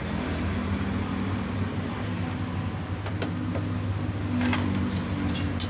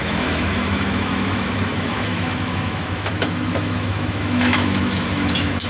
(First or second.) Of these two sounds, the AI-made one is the second